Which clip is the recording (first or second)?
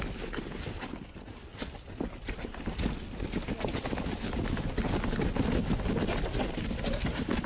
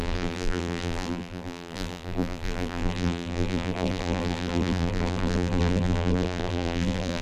first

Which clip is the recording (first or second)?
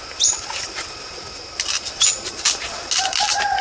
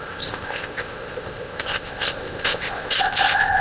first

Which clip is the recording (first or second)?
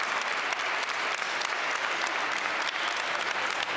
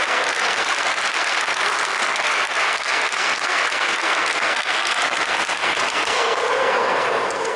first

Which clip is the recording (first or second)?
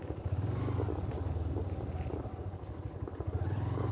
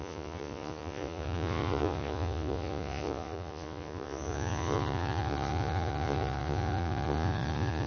first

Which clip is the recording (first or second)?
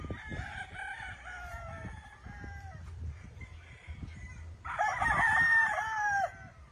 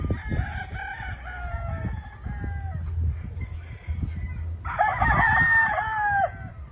second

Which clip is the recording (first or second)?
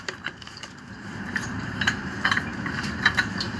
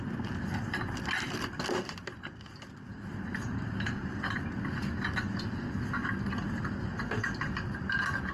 second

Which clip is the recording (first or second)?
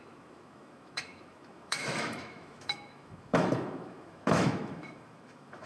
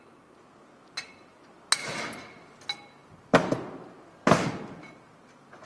second